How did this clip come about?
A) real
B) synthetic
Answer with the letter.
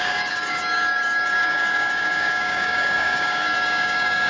B